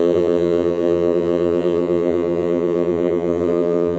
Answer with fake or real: fake